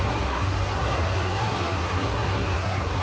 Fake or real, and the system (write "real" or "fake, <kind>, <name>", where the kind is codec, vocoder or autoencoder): fake, codec, SNAC